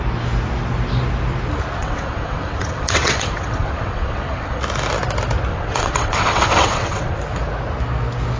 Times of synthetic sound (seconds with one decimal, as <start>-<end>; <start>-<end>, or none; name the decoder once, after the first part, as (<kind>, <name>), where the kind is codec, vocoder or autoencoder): 1.8-4.6 (vocoder, WaveNeXt); 5.5-7.2